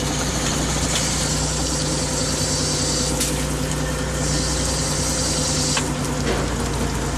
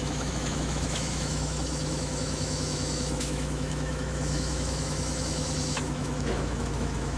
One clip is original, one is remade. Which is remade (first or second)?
second